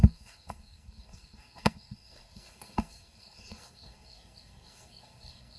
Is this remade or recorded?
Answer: remade